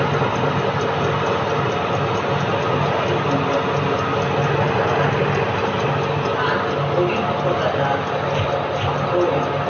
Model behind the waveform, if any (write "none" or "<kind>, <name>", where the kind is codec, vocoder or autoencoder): none